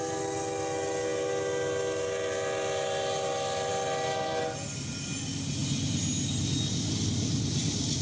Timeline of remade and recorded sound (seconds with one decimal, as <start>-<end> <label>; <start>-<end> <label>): 0.0-8.0 recorded